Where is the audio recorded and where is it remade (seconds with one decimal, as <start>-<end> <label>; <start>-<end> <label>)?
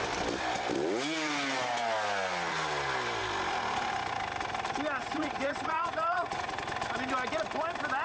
0.0-5.0 recorded; 5.0-6.6 remade; 6.6-8.0 recorded